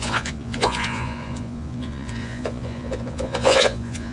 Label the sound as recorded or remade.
remade